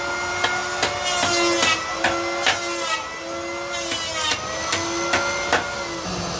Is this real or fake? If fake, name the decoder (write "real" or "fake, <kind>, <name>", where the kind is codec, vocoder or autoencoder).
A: real